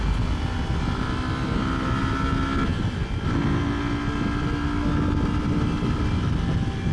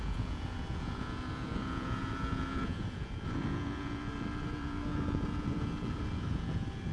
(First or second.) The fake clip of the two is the second